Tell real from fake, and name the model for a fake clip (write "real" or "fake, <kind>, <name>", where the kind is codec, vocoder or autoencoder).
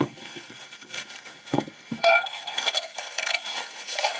fake, codec, SNAC